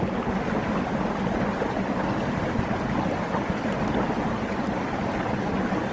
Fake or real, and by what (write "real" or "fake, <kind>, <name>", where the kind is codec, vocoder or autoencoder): real